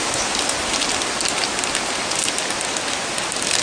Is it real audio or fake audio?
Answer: real